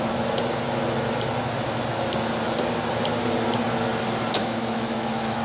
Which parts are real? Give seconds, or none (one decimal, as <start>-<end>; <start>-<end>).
0.0-4.4